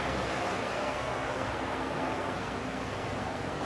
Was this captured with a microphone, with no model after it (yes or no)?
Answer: no